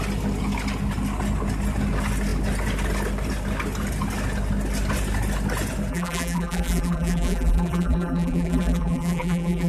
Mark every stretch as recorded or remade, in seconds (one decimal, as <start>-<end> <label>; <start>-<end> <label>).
0.0-5.9 recorded; 5.9-9.7 remade